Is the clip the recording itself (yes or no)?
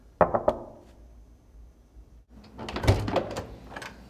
yes